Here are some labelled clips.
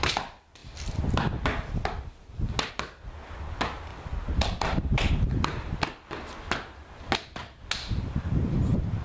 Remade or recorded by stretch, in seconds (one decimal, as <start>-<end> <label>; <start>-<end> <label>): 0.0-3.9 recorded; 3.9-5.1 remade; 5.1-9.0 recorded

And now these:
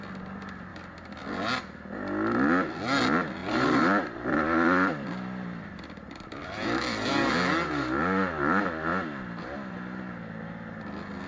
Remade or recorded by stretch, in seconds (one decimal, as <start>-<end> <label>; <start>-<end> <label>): 0.0-3.4 recorded; 3.4-7.3 remade; 7.3-11.3 recorded

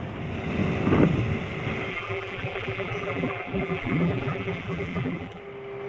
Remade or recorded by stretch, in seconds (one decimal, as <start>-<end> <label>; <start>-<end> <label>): 0.0-1.9 recorded; 1.9-5.4 remade; 5.4-5.9 recorded

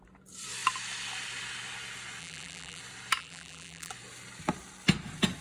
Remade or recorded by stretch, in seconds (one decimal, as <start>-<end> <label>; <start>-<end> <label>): 0.0-2.2 recorded; 2.2-2.8 remade; 2.8-3.2 recorded; 3.2-3.9 remade; 3.9-5.4 recorded

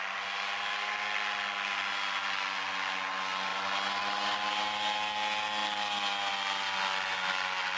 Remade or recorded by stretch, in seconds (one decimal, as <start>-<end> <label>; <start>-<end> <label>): 0.0-7.8 recorded